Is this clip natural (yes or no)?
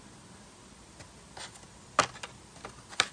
yes